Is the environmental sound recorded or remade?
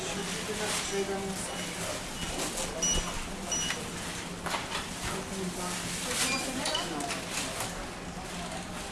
recorded